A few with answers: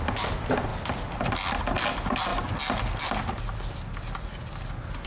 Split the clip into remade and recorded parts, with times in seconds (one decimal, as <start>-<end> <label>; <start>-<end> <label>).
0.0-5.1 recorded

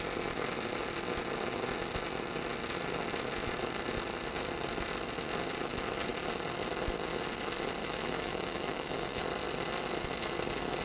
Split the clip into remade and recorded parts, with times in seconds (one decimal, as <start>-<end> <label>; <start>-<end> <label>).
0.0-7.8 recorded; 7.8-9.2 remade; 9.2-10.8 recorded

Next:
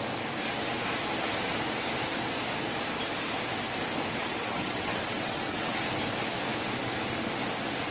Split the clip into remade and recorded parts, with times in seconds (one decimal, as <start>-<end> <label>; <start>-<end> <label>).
0.0-4.2 recorded; 4.2-5.8 remade; 5.8-7.9 recorded